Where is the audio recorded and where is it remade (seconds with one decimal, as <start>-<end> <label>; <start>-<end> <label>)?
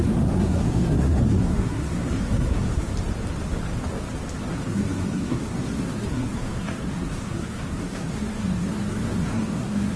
0.0-2.9 remade; 2.9-4.5 recorded; 4.5-10.0 remade